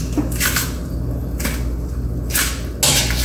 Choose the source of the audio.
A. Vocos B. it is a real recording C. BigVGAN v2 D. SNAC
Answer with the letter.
B